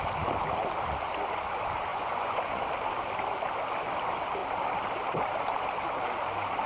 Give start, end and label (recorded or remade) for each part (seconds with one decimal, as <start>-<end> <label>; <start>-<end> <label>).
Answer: 0.0-1.9 recorded; 1.9-2.6 remade; 2.6-6.7 recorded